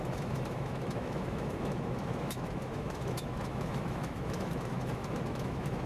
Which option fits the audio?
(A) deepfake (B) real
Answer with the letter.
A